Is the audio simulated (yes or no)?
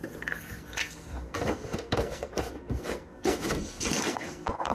yes